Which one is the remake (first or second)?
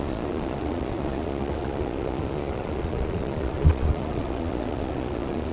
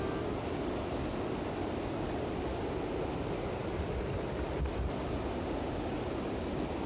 first